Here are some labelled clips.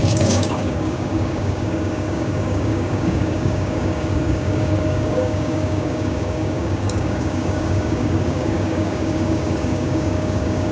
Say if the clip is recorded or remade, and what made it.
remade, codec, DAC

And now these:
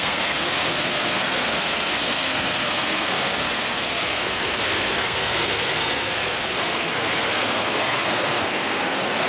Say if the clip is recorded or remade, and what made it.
remade, codec, SNAC